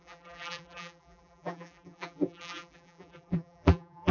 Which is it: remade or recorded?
remade